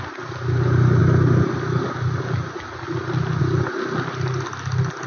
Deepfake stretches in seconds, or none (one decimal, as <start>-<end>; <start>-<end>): none